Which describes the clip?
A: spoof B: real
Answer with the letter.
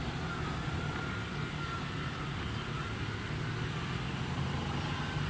B